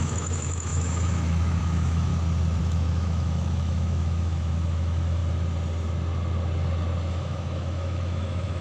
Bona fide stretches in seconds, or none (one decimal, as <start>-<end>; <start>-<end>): 2.1-2.6; 5.2-7.1